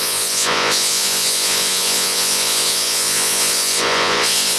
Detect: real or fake fake